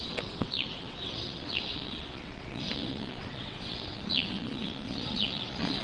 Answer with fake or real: fake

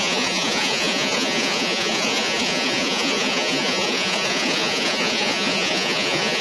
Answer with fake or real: fake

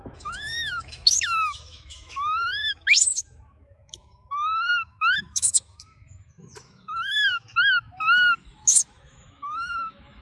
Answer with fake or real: fake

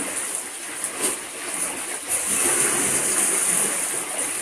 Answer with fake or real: real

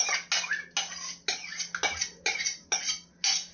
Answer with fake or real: real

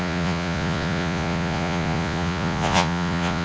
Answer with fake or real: fake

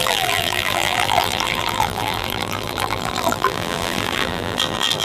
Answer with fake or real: fake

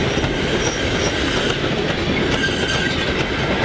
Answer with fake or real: real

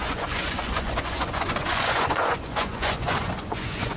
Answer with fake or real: fake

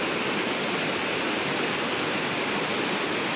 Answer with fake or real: real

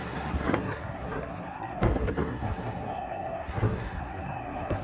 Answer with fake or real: fake